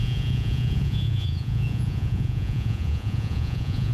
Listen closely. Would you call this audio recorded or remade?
remade